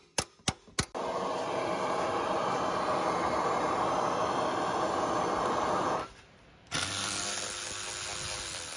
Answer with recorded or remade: recorded